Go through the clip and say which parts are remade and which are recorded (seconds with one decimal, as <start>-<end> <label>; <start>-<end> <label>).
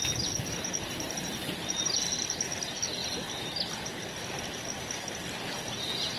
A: 0.0-6.2 recorded